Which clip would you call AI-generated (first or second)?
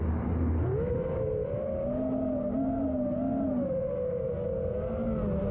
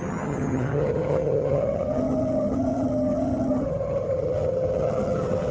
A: second